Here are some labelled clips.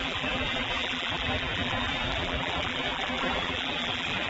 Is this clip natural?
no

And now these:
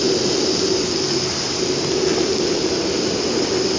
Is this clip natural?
yes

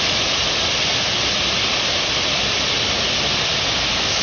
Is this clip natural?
yes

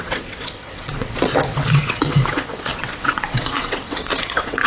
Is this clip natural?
no